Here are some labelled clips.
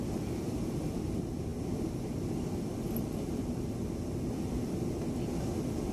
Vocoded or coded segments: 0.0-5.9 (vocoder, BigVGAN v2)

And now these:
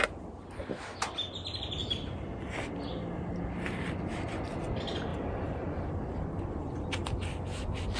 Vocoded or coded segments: 1.8-2.5 (vocoder, BigVGAN v2); 5.1-7.3

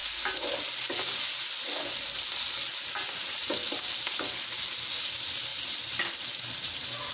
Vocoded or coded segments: none

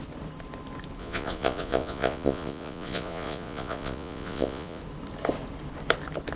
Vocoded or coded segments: 1.0-4.8 (vocoder, Vocos)

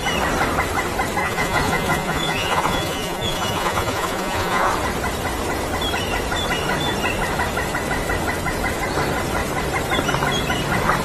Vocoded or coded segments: 1.2-4.7 (vocoder, Vocos)

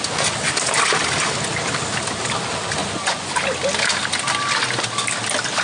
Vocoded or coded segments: 2.8-3.3 (vocoder, Vocos)